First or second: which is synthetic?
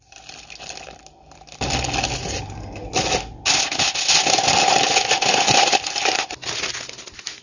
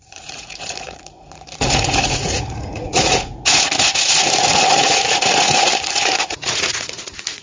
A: second